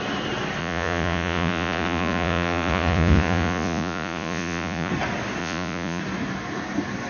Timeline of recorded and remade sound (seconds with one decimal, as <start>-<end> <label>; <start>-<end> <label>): 0.0-0.6 recorded; 0.6-4.9 remade; 4.9-5.4 recorded; 5.4-6.0 remade; 6.0-7.1 recorded